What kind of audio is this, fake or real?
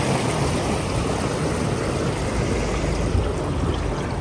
real